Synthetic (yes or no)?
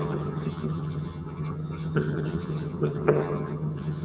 yes